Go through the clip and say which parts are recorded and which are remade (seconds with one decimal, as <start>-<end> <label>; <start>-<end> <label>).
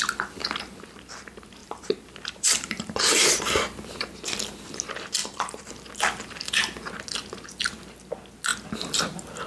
0.0-1.6 recorded; 1.6-3.4 remade; 3.4-5.2 recorded; 5.2-5.7 remade; 5.7-9.5 recorded